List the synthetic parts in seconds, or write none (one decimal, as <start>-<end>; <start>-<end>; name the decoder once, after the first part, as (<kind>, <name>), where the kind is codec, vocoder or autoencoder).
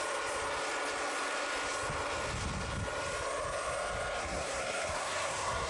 4.2-5.7 (codec, SNAC)